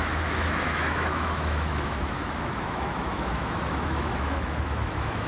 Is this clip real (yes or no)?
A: no